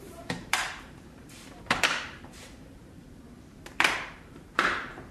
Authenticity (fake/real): fake